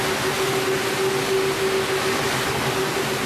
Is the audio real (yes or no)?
yes